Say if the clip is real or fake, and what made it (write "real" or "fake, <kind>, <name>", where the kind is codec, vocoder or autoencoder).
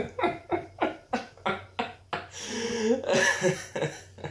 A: real